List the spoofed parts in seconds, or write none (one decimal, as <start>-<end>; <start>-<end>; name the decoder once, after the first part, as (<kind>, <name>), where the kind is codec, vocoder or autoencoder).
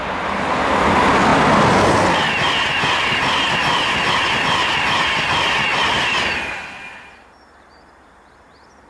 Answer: none